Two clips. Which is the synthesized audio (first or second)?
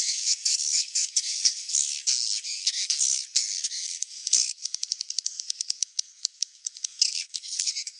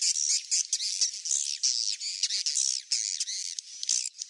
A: first